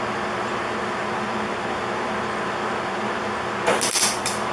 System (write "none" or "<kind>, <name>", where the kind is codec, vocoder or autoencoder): none